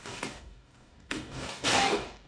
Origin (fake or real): fake